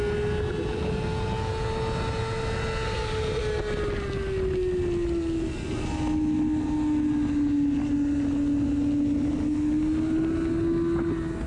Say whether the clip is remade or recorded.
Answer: recorded